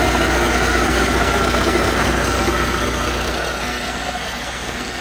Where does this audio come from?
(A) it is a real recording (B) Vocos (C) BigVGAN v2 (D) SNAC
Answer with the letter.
D